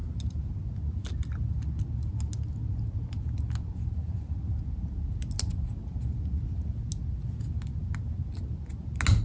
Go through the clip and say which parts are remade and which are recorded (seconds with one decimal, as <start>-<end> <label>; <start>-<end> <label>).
0.0-9.2 recorded